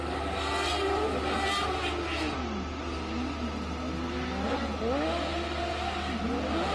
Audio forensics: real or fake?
real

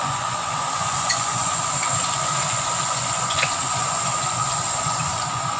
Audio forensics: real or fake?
fake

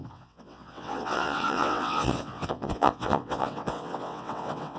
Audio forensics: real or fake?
fake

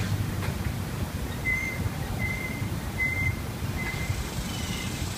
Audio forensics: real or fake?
fake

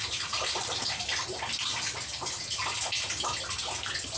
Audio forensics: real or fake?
real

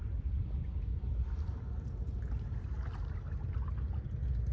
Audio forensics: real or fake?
real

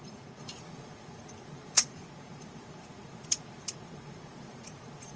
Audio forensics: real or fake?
fake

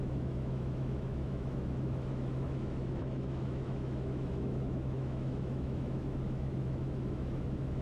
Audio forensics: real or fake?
fake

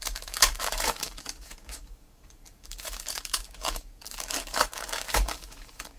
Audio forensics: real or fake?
fake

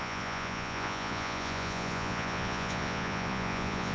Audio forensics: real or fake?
fake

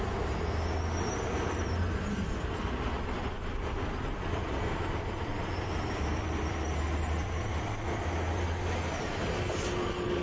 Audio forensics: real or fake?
real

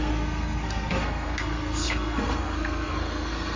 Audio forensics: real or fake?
fake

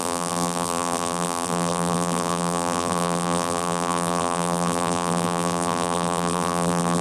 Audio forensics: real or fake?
fake